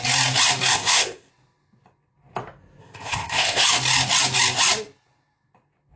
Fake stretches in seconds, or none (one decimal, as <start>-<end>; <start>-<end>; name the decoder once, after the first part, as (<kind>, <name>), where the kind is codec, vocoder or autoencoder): 0.7-1.3 (codec, ZipCodec); 2.8-3.6